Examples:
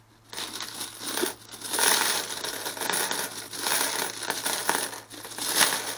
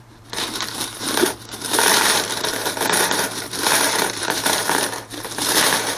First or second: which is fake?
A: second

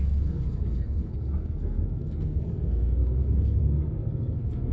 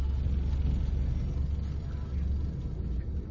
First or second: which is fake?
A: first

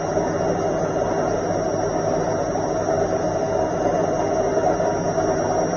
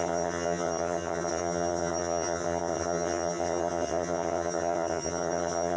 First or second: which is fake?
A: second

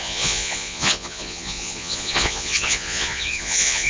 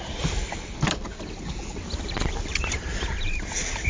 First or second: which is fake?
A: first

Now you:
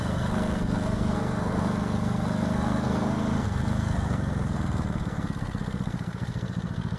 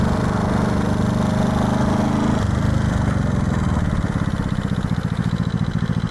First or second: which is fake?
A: first